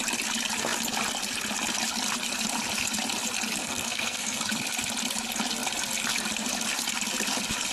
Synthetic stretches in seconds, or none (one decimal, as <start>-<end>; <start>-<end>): 3.6-4.4